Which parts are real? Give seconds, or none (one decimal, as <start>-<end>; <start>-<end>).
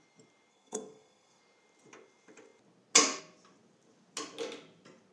0.0-0.5; 1.4-5.1